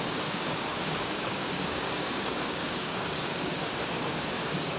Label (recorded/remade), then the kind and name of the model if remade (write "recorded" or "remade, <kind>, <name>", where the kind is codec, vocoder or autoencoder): remade, codec, DAC